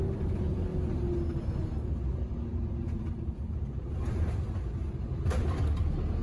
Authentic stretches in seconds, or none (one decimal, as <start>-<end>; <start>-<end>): 0.0-2.5; 3.9-6.2

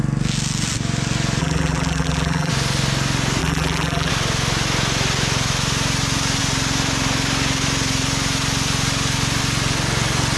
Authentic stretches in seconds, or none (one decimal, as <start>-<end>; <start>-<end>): 0.0-1.4; 2.5-3.4; 4.1-10.4

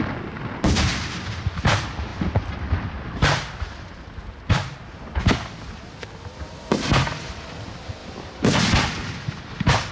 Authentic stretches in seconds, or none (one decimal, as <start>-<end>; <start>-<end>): 0.0-2.1; 5.2-8.0

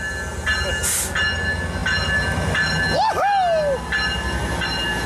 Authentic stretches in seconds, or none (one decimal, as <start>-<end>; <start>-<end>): 0.0-5.1